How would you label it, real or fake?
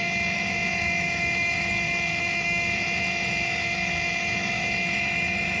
fake